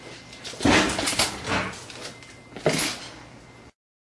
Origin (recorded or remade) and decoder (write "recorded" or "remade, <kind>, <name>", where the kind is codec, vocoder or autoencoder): recorded